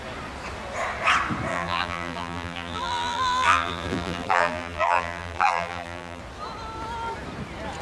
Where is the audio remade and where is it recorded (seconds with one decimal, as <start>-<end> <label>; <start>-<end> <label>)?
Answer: 0.0-1.5 recorded; 1.5-6.2 remade; 6.2-7.8 recorded